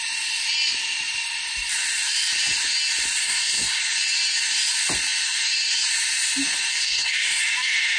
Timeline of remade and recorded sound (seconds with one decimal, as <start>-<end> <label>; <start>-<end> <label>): 0.0-3.2 recorded; 3.2-3.8 remade; 3.8-6.7 recorded; 6.7-7.4 remade; 7.4-8.0 recorded